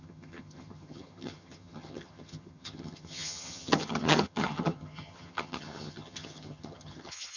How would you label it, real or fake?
fake